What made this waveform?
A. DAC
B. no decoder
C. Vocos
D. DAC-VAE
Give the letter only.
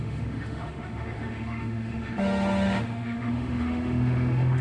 D